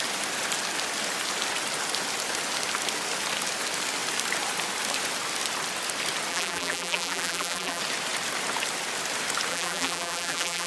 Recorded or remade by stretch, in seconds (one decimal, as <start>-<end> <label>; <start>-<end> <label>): 0.0-6.3 recorded; 6.3-7.8 remade; 7.8-9.5 recorded; 9.5-10.7 remade